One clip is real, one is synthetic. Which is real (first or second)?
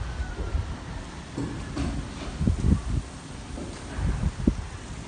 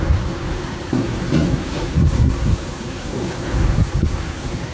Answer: first